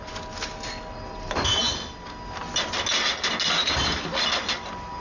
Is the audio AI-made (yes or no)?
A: no